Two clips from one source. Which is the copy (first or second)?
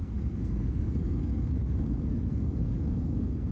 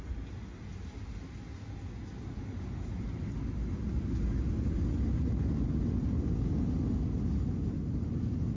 first